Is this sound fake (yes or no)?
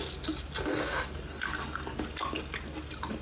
no